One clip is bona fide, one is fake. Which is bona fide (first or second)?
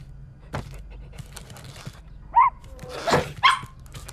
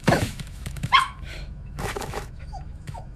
first